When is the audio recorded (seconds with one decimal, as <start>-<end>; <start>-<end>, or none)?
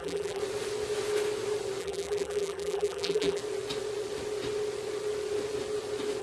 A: 0.4-1.8; 3.4-6.2